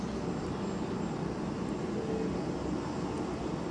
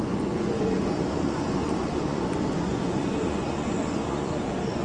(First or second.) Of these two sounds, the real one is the first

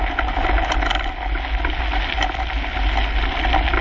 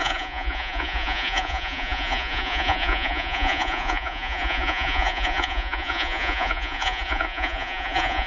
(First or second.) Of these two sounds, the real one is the first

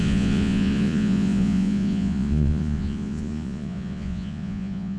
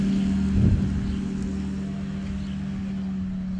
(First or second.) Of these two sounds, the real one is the second